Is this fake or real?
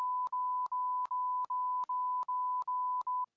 real